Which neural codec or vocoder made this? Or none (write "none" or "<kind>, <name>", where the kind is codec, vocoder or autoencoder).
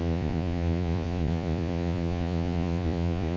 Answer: vocoder, Vocos